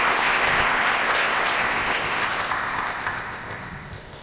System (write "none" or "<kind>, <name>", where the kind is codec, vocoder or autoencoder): codec, ZipCodec